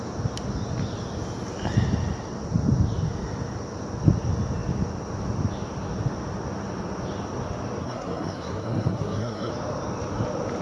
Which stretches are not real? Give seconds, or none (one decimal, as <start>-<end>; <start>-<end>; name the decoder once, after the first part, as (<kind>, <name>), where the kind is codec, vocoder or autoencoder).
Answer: 7.8-9.5 (codec, SNAC)